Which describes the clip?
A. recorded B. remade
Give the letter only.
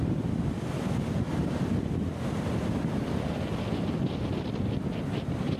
A